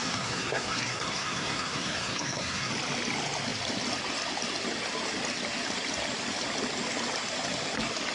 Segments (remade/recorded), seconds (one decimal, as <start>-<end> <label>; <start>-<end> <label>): 0.0-2.7 remade; 2.7-8.1 recorded